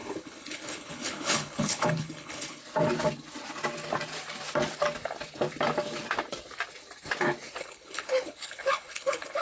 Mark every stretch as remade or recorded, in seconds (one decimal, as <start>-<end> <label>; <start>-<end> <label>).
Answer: 0.0-2.6 remade; 2.6-7.6 recorded; 7.6-9.4 remade